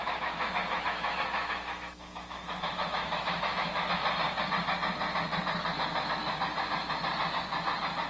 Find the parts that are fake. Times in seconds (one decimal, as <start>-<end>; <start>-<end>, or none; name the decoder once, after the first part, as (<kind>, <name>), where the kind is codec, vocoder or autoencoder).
0.0-3.9 (autoencoder, DAC-VAE)